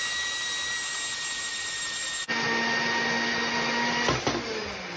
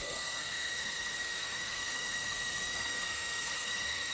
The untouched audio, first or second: first